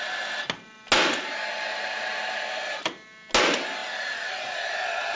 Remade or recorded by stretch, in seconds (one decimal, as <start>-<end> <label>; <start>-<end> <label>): 0.0-5.2 recorded